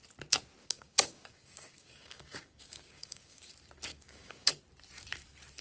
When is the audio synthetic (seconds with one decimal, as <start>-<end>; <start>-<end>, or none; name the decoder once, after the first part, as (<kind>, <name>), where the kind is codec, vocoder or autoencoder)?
0.6-3.5 (codec, DAC); 3.9-4.5